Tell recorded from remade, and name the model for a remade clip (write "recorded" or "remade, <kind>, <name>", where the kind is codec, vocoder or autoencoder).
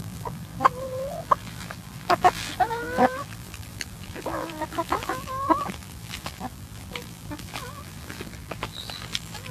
remade, vocoder, BigVGAN v2